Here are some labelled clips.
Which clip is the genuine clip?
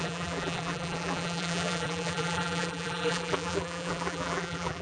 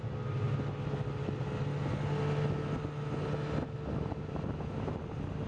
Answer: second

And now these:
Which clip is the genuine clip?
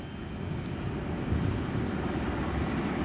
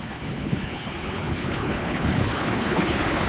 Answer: first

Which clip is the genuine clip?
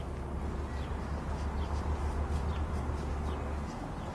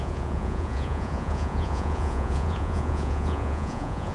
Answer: first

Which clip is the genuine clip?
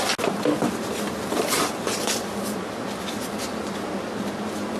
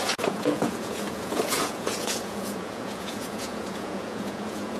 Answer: first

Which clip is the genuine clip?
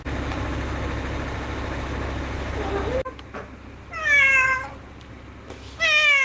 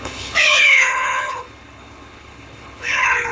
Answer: first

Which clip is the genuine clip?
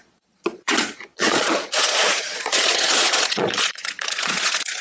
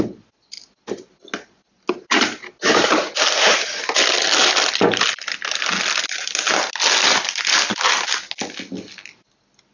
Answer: second